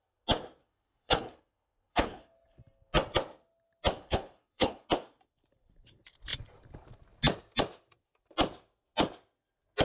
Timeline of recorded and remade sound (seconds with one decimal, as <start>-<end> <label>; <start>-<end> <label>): 0.0-0.6 recorded; 0.6-1.4 remade; 1.4-1.9 recorded; 1.9-2.6 remade; 2.6-4.0 recorded; 4.0-4.9 remade; 4.9-9.8 recorded